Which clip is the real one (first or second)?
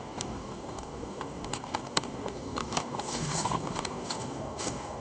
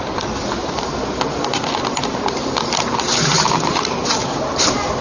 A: second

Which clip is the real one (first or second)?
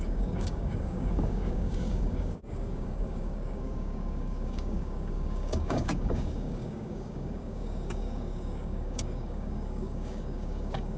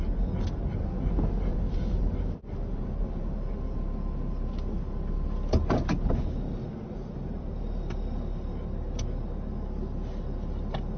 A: second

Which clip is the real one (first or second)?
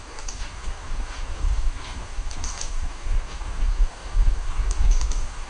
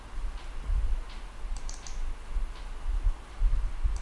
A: second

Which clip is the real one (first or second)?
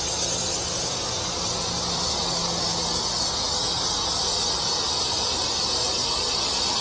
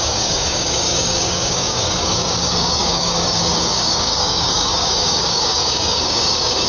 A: first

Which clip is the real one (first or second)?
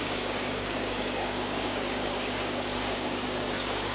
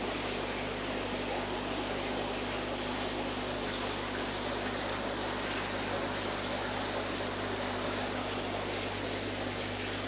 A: second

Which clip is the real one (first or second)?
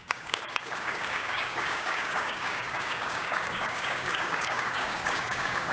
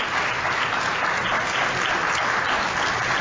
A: second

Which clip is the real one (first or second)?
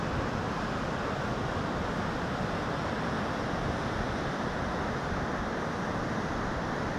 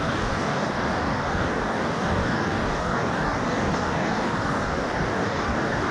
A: first